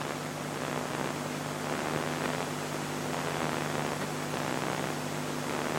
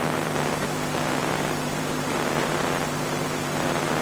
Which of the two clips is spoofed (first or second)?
second